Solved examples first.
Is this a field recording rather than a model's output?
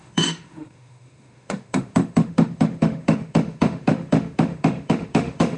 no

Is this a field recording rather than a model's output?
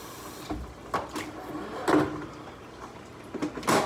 yes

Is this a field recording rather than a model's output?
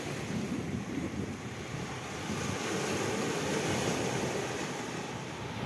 yes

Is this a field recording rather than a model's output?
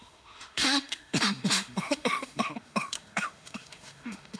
no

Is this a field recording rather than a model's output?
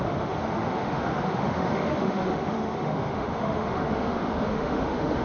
no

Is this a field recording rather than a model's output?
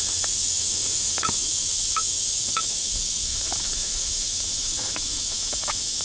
no